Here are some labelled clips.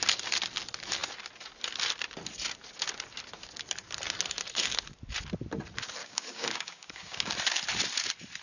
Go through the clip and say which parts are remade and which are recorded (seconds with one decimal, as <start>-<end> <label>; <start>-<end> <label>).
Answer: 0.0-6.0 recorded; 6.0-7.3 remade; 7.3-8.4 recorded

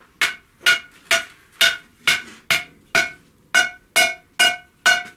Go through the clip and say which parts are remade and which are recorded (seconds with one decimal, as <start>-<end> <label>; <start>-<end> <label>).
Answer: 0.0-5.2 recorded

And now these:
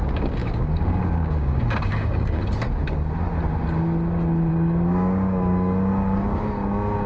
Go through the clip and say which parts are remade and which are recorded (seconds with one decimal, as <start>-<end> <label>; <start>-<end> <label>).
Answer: 0.0-2.4 remade; 2.4-4.5 recorded; 4.5-7.1 remade

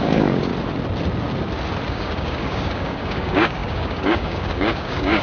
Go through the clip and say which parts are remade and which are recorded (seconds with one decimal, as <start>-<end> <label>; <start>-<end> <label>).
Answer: 0.0-0.5 remade; 0.5-1.9 recorded; 1.9-5.2 remade

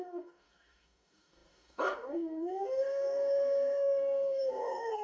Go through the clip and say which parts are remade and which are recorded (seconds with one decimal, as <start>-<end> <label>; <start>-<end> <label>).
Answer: 0.0-5.0 remade

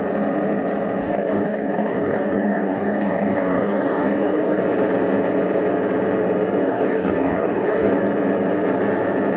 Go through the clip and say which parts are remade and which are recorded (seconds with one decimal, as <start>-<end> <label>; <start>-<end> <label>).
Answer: 0.0-1.0 recorded; 1.0-4.6 remade; 4.6-6.6 recorded; 6.6-8.0 remade; 8.0-9.4 recorded

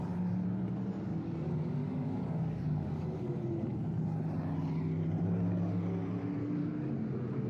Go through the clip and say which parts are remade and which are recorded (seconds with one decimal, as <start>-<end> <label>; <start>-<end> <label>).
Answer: 0.0-1.1 recorded; 1.1-3.3 remade; 3.3-6.4 recorded; 6.4-6.9 remade; 6.9-7.5 recorded